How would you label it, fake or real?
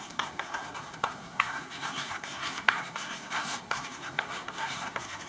fake